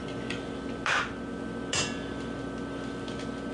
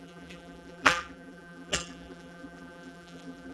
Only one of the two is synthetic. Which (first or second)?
second